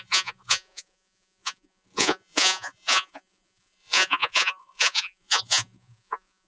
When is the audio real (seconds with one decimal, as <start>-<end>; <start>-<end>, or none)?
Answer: none